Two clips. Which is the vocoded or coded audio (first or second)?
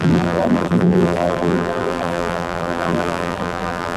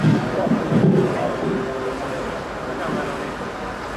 first